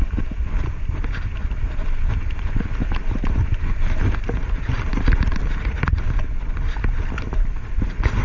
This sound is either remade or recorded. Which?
recorded